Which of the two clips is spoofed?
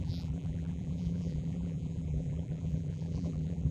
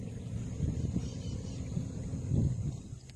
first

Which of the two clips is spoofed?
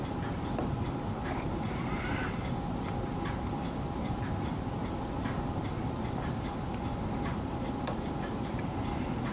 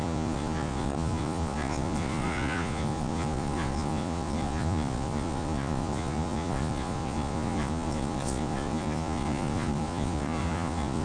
second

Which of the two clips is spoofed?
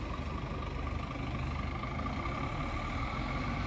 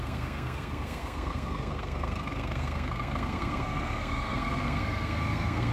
second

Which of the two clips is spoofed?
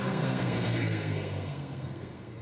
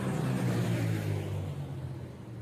first